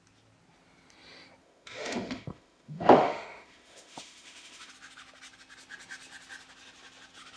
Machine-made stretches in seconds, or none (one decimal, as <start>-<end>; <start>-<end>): 1.4-4.7